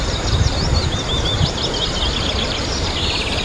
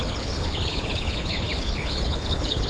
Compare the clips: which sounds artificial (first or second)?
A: second